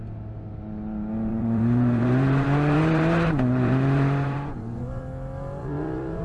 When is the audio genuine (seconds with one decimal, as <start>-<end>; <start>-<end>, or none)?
0.0-1.3; 5.0-5.6